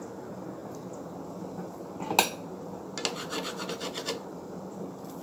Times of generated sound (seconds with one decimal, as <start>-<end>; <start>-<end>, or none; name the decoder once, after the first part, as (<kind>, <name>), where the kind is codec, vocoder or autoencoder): none